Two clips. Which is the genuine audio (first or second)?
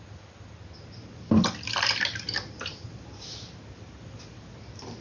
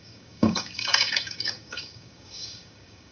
first